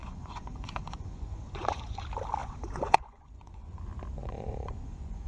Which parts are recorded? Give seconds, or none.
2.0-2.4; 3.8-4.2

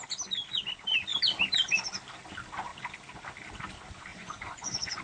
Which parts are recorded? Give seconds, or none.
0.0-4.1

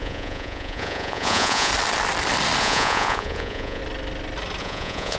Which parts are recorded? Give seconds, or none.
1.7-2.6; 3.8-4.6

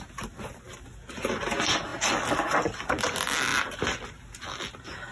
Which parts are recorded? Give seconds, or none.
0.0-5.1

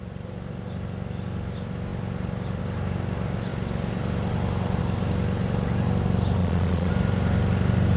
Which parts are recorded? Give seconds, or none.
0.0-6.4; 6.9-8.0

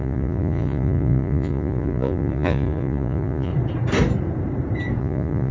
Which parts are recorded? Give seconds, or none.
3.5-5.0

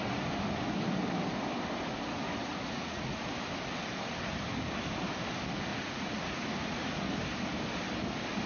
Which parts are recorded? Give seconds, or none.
0.0-2.4; 3.2-5.7; 7.1-8.5

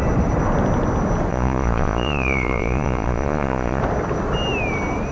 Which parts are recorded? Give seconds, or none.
0.0-1.3; 3.8-5.1